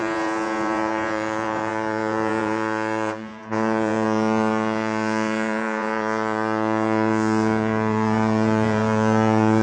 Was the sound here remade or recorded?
remade